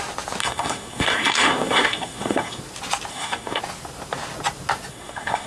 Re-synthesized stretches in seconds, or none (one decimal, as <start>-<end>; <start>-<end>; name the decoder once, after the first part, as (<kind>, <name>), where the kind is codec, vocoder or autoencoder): 0.4-2.6 (codec, SNAC); 3.1-3.6; 4.9-5.5